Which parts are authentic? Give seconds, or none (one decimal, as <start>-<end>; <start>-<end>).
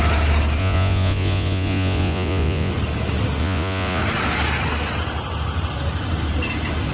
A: 0.0-0.6; 2.7-3.4; 4.0-6.9